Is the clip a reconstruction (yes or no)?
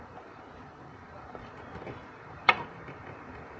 yes